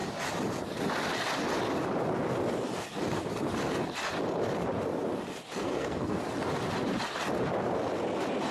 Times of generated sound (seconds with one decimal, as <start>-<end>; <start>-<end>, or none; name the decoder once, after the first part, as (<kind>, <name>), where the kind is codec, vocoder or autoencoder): 5.6-6.2 (codec, SNAC)